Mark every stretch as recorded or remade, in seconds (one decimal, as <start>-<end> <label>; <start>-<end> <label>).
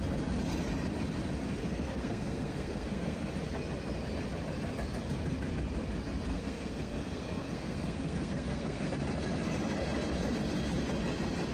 0.0-1.6 recorded; 1.6-3.3 remade; 3.3-6.3 recorded; 6.3-8.9 remade; 8.9-11.5 recorded